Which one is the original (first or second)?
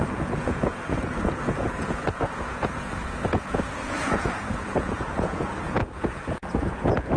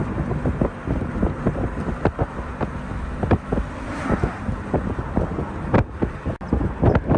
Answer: second